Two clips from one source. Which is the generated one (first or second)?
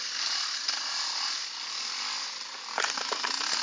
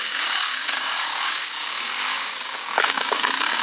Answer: second